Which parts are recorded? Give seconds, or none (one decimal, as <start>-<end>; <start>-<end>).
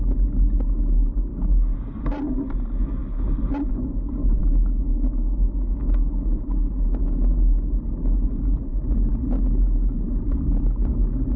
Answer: 0.0-1.3; 2.0-4.4; 6.1-11.4